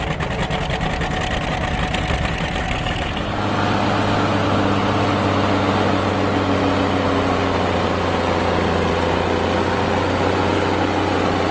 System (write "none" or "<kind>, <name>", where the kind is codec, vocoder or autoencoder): none